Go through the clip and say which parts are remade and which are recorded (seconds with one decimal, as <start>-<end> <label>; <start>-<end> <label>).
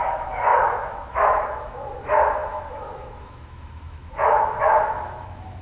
0.0-5.6 remade